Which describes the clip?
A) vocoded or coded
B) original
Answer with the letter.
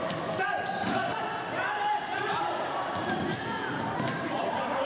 A